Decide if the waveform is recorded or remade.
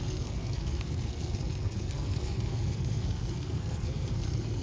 remade